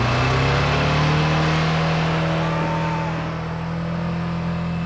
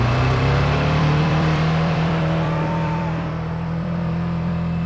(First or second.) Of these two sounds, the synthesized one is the second